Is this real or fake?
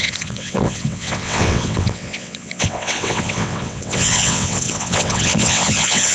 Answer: fake